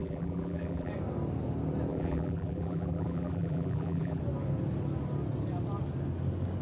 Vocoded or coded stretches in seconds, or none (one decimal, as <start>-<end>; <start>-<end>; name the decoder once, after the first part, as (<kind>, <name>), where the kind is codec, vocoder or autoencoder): 0.0-0.9 (vocoder, BigVGAN v2); 1.9-4.2